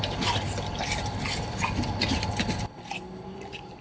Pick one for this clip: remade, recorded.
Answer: recorded